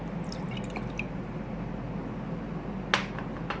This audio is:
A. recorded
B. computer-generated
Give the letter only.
A